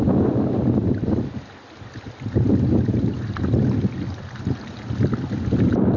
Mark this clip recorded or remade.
recorded